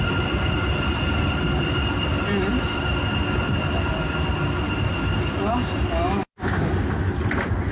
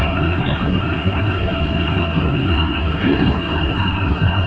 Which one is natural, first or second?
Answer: first